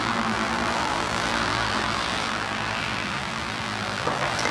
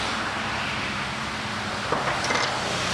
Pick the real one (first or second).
second